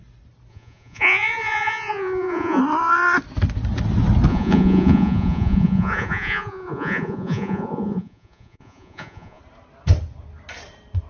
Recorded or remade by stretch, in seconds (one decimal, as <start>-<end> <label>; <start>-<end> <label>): 0.0-0.5 recorded; 0.5-2.6 remade; 2.6-4.3 recorded; 4.3-9.4 remade; 9.4-11.1 recorded